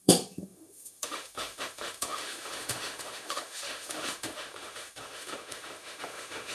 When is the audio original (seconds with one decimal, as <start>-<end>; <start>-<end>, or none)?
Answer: none